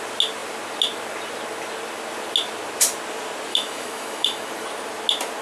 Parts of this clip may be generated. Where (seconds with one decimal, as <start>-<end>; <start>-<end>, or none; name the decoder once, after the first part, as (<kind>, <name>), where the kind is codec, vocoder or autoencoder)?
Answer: 3.5-4.5 (autoencoder, DAC-VAE)